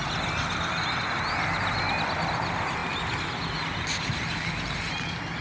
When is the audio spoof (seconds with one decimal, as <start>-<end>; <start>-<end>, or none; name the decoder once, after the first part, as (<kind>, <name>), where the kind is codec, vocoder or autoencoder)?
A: none